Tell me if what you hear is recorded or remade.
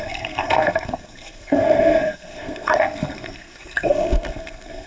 remade